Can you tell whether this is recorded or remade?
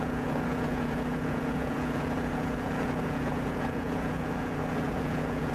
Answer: remade